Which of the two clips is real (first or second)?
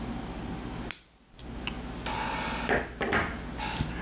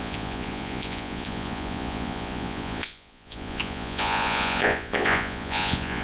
first